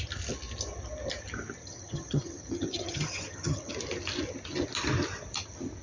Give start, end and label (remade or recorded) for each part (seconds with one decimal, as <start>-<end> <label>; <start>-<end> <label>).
0.0-1.6 recorded; 1.6-3.7 remade; 3.7-5.8 recorded